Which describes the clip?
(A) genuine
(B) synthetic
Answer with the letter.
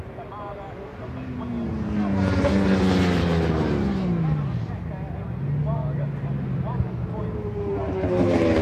A